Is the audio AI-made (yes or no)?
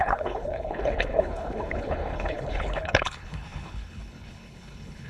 yes